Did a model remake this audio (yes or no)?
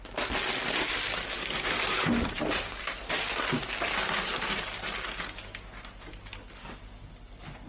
no